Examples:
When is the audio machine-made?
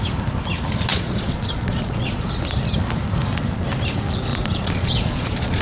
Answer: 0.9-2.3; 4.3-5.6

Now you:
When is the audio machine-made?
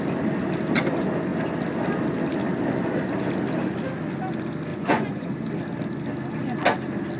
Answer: 4.7-5.3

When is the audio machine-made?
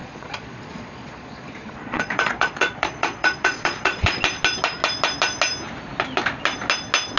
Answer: 0.0-4.2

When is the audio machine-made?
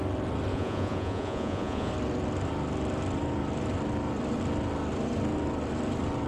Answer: 0.5-1.9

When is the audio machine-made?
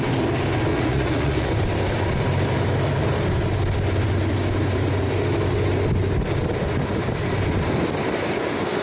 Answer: 0.7-1.5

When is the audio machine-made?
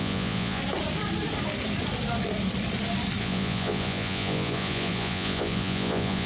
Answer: 0.0-0.6; 3.2-6.3